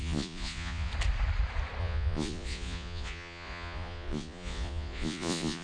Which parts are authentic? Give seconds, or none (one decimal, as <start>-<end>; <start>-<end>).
0.9-1.8